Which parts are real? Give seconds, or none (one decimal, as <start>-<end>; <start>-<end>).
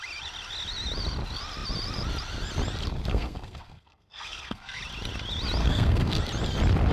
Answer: 0.0-3.1; 4.8-5.6; 6.2-6.9